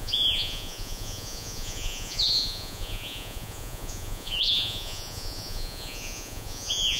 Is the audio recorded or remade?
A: remade